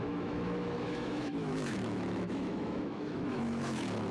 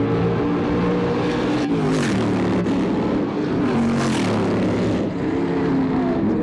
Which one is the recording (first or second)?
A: second